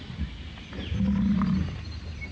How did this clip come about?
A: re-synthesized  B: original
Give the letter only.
B